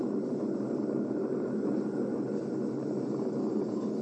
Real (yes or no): yes